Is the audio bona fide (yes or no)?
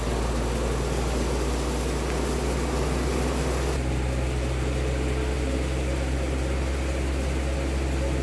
yes